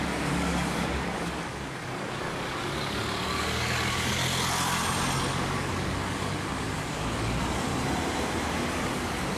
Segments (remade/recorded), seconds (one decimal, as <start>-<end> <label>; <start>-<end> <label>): 0.0-4.2 remade; 4.2-5.3 recorded; 5.3-7.7 remade; 7.7-8.8 recorded; 8.8-9.4 remade